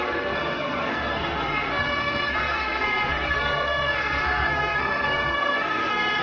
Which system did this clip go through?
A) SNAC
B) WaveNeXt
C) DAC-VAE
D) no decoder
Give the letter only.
A